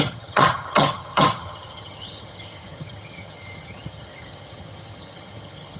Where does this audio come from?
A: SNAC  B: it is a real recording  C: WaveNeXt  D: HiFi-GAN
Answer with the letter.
D